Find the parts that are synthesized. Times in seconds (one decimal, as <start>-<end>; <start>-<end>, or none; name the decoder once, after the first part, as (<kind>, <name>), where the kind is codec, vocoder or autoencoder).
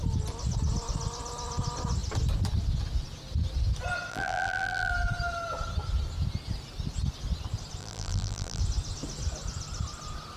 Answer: 4.1-4.9 (vocoder, BigVGAN v2); 7.8-8.6